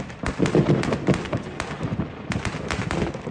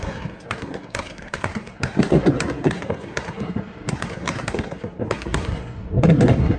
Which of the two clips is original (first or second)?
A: first